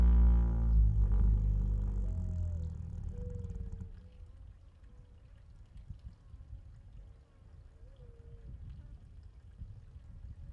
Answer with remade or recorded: recorded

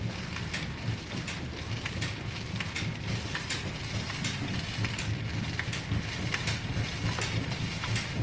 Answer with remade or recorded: recorded